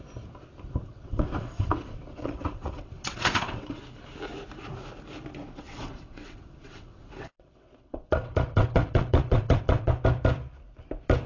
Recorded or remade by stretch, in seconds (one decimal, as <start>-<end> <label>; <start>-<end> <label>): 0.0-0.8 recorded; 0.8-3.8 remade; 3.8-5.4 recorded; 5.4-9.9 remade; 9.9-11.3 recorded